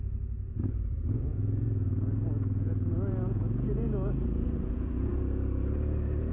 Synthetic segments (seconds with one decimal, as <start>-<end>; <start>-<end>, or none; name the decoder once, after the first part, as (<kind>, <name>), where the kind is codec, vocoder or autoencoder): 1.3-5.1 (vocoder, Vocos)